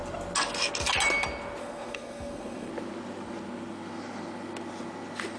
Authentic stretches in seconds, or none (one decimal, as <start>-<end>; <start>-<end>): 0.0-1.6; 2.7-5.4